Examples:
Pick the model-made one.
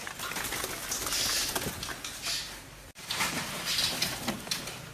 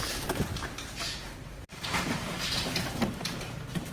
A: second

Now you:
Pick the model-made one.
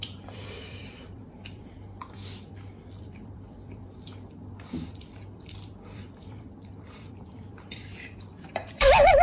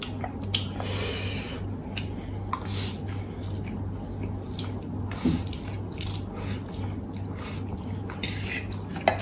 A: first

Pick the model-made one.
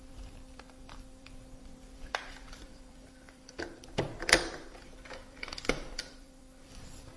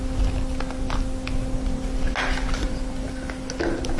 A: first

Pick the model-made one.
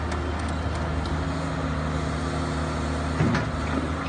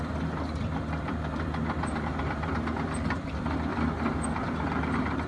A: second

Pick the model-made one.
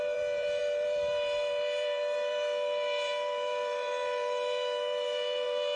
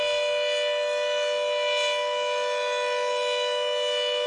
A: first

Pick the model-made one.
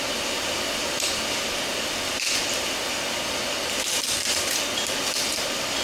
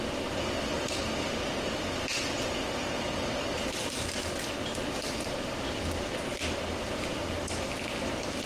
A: first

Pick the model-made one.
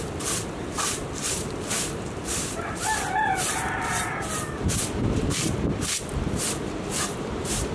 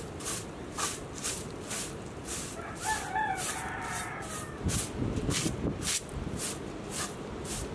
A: first